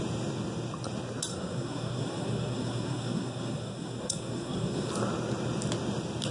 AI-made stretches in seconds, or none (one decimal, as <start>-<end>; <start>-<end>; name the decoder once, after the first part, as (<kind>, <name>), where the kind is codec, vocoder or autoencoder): 1.3-4.9 (codec, SNAC)